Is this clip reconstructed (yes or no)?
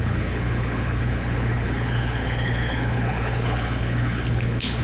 yes